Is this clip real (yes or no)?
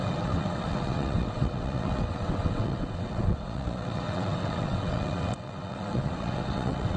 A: no